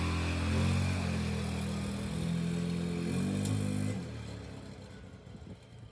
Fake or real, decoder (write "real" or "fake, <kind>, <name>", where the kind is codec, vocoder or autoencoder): real